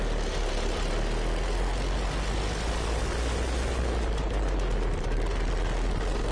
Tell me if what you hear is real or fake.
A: real